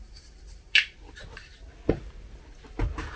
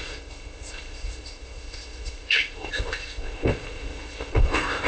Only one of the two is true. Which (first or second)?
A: first